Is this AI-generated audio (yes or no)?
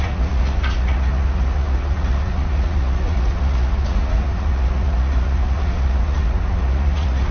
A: yes